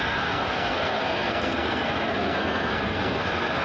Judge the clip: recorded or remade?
remade